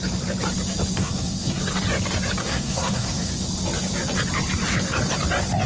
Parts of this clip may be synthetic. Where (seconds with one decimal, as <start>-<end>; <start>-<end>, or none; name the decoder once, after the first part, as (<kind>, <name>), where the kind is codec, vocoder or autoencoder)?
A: 1.0-1.6 (codec, SNAC); 2.4-3.3